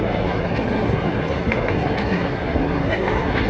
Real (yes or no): no